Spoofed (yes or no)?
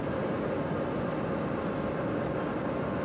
no